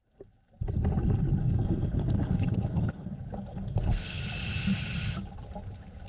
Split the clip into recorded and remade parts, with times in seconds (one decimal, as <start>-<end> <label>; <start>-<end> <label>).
0.0-1.4 recorded; 1.4-3.1 remade; 3.1-3.5 recorded; 3.5-4.2 remade; 4.2-6.1 recorded